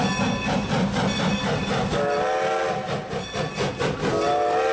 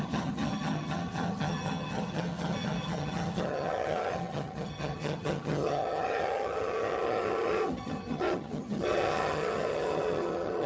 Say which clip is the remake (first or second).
second